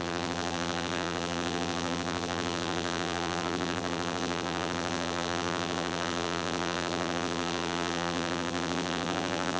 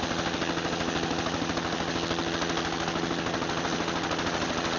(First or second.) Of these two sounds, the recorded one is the second